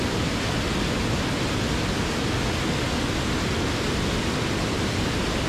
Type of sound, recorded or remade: recorded